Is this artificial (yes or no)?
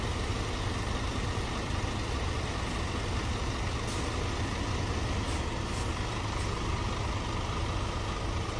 no